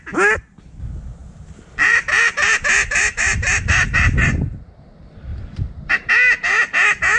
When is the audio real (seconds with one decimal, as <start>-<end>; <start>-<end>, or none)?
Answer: 0.0-1.2; 4.4-5.3; 6.1-7.2